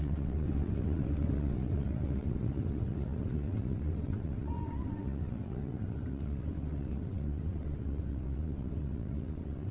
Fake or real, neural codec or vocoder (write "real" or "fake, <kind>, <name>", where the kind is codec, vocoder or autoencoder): fake, vocoder, WaveNeXt